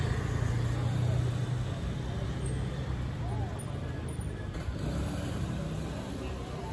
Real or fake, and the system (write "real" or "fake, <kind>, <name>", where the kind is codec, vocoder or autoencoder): real